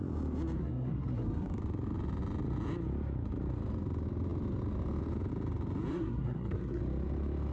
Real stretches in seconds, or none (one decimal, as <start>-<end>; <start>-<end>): 0.0-0.6; 1.6-5.9; 6.8-7.5